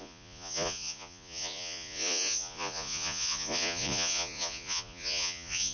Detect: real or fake fake